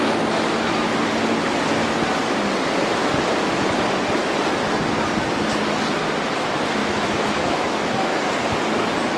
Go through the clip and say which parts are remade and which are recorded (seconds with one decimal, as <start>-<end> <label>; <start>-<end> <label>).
0.0-6.8 recorded; 6.8-8.2 remade; 8.2-9.2 recorded